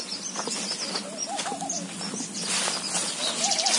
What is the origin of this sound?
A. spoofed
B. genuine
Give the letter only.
B